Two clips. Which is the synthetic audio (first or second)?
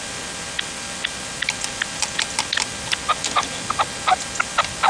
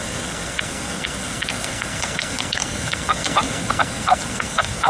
second